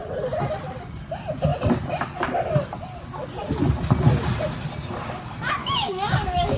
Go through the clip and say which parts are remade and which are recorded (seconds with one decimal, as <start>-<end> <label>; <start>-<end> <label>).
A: 0.0-5.6 recorded; 5.6-6.6 remade